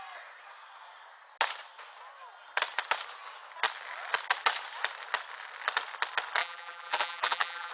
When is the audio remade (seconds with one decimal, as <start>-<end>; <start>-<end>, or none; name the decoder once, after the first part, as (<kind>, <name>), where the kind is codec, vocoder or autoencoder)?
6.4-7.7 (vocoder, BigVGAN v2)